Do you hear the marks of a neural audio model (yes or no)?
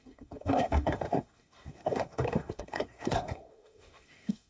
yes